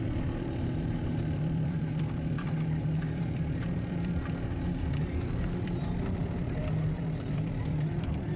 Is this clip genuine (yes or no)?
no